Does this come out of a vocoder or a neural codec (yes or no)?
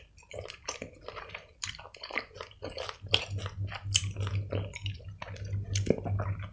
yes